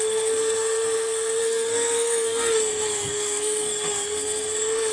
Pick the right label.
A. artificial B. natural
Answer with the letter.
A